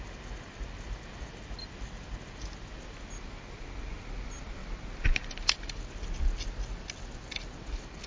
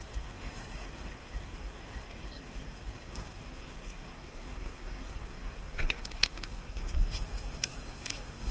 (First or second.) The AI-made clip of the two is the second